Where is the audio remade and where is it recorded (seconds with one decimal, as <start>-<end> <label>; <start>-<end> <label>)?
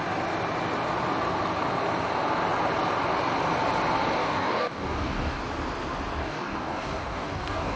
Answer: 0.0-4.2 recorded; 4.2-5.4 remade; 5.4-6.2 recorded; 6.2-7.8 remade